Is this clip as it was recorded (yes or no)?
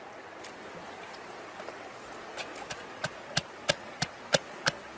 yes